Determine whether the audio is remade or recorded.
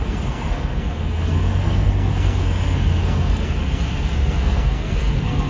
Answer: remade